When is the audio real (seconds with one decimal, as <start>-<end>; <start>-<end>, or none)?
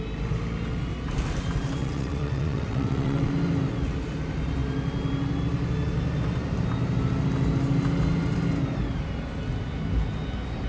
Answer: 0.0-1.8; 3.3-10.7